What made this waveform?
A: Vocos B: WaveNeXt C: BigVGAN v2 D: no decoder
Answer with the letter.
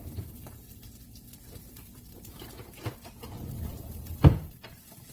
C